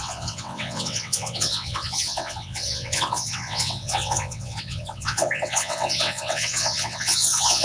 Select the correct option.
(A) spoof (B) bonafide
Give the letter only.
A